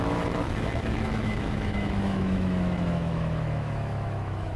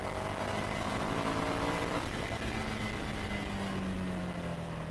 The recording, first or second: second